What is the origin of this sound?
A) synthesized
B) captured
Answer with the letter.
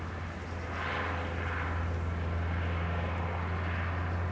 B